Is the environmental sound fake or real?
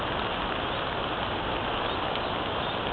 real